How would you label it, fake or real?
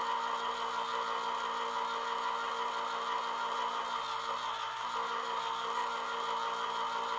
real